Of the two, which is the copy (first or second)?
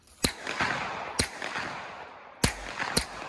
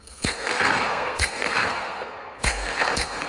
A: second